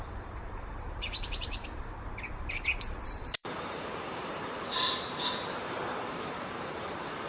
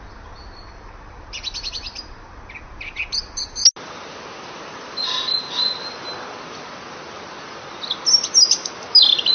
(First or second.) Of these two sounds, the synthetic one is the first